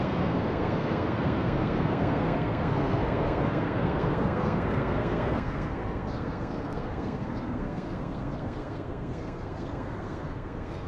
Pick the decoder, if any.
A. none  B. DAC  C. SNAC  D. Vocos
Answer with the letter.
C